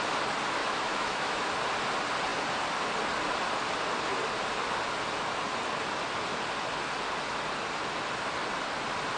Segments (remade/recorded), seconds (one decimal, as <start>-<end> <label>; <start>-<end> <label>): 0.0-0.6 recorded; 0.6-1.5 remade; 1.5-9.2 recorded